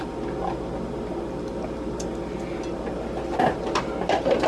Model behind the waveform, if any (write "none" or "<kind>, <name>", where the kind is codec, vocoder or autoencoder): none